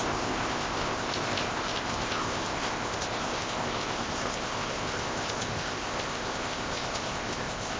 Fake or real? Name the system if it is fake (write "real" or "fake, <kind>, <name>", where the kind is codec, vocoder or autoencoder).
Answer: fake, codec, ZipCodec